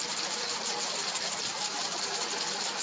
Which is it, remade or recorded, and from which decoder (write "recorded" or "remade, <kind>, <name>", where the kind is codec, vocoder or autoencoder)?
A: recorded